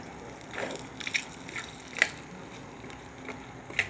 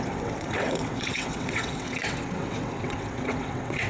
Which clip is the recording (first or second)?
first